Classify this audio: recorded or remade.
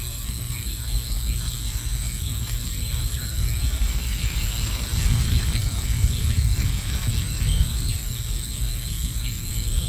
remade